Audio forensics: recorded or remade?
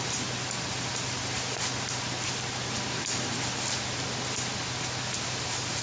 recorded